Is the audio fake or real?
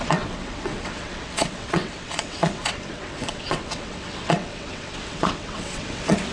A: fake